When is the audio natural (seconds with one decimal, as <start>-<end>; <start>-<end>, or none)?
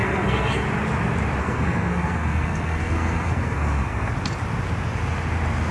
0.6-1.4; 4.1-5.7